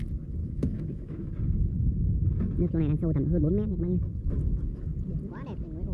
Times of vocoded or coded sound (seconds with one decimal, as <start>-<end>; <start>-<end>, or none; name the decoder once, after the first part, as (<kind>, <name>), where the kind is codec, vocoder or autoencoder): 0.4-1.3 (autoencoder, DAC-VAE)